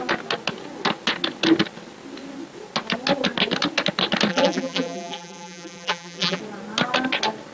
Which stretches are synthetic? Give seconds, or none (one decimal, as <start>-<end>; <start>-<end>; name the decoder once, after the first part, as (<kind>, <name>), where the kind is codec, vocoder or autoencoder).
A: 4.3-6.4 (vocoder, BigVGAN v2)